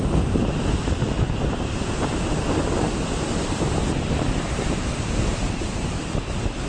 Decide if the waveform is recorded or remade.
recorded